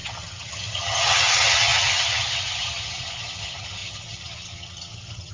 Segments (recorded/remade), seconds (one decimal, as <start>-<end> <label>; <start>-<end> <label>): 0.0-5.3 remade